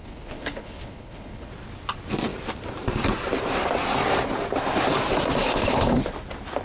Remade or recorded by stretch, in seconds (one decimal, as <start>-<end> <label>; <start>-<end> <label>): 0.0-1.5 remade; 1.5-5.4 recorded; 5.4-6.1 remade; 6.1-6.6 recorded